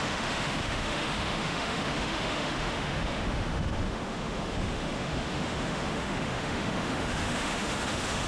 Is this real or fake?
fake